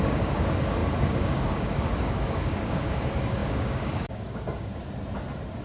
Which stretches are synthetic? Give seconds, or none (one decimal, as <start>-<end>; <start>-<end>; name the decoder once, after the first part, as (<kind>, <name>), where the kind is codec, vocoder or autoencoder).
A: 0.0-4.7 (codec, DAC)